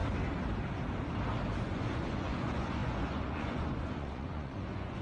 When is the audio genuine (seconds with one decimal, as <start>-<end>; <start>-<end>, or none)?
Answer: 0.0-1.6